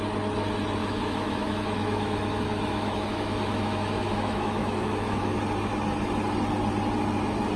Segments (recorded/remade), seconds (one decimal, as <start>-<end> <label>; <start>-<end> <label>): 0.0-0.8 recorded; 0.8-5.4 remade; 5.4-7.6 recorded